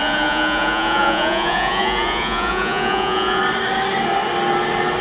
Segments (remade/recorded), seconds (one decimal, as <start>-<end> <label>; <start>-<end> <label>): 0.0-3.4 remade; 3.4-5.0 recorded